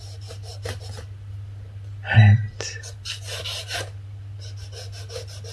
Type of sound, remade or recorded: recorded